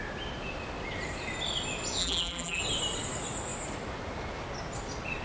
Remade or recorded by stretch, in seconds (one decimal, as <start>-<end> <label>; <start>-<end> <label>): 0.0-2.0 recorded; 2.0-2.6 remade; 2.6-5.2 recorded